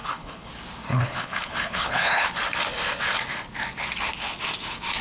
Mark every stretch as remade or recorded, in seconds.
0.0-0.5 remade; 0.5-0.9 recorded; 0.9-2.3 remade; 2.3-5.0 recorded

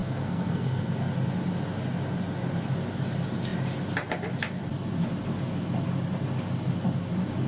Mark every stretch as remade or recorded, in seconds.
0.0-0.9 remade; 0.9-7.5 recorded

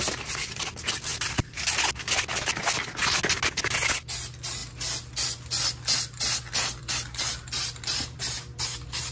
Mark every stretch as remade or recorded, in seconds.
0.0-9.1 recorded

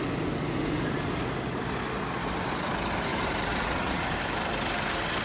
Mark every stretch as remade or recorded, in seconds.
0.0-3.5 recorded; 3.5-4.1 remade; 4.1-5.2 recorded

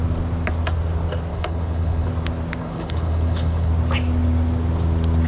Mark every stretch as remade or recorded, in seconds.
0.0-1.3 recorded; 1.3-2.1 remade; 2.1-2.6 recorded; 2.6-3.7 remade; 3.7-5.3 recorded

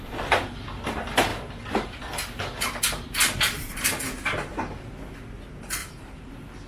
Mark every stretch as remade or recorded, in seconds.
0.0-3.2 recorded; 3.2-4.7 remade; 4.7-5.8 recorded; 5.8-6.3 remade; 6.3-6.7 recorded